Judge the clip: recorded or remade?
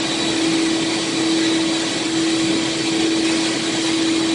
recorded